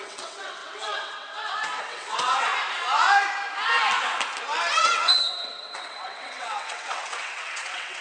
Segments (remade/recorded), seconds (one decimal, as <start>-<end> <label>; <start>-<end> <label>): 0.0-2.5 remade; 2.5-4.7 recorded; 4.7-8.0 remade